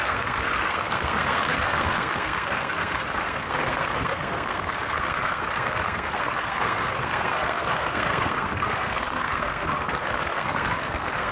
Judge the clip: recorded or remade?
remade